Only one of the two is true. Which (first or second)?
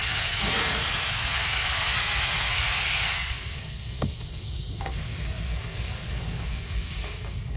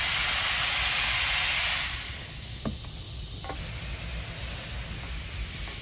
second